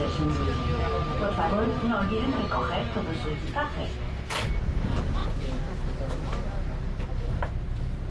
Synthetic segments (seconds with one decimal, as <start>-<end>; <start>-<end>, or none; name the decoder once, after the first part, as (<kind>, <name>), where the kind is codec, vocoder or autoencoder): 3.8-4.3 (autoencoder, DAC-VAE)